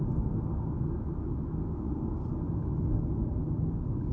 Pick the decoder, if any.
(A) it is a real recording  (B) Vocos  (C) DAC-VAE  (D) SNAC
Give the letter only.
A